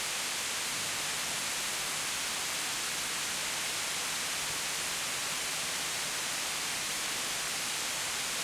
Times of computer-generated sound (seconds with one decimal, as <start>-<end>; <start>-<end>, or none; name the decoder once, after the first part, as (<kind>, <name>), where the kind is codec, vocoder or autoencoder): 5.2-7.0 (vocoder, BigVGAN v2)